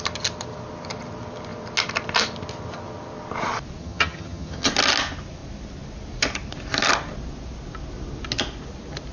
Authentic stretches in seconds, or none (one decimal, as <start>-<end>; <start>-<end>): 0.0-3.8; 4.7-9.1